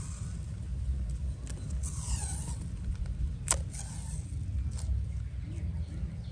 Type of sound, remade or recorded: recorded